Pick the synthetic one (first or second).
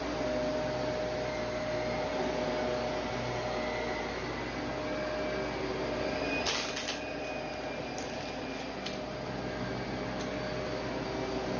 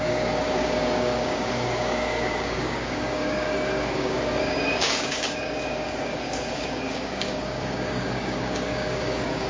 second